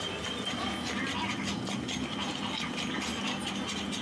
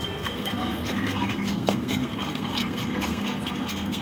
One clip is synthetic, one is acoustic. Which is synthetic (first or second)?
second